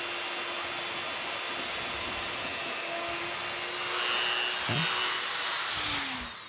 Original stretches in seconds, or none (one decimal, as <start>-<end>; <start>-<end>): 0.0-6.5